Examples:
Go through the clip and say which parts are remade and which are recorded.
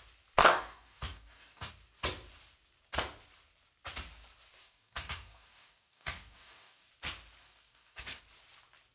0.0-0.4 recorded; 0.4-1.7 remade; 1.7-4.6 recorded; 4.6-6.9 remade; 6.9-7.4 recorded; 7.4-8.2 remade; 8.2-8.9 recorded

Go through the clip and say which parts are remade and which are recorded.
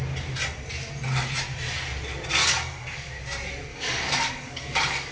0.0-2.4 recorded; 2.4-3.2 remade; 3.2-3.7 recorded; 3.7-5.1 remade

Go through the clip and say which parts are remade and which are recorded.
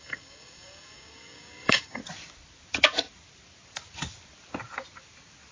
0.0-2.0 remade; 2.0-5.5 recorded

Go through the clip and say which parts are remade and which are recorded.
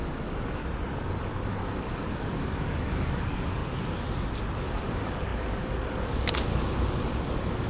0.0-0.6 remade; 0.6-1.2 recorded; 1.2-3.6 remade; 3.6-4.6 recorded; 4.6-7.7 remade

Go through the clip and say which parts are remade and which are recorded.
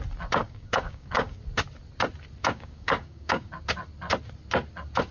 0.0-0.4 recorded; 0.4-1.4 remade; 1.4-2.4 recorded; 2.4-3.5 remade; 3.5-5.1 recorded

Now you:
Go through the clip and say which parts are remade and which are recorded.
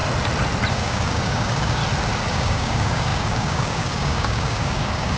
0.0-0.7 recorded; 0.7-1.8 remade; 1.8-2.3 recorded; 2.3-5.2 remade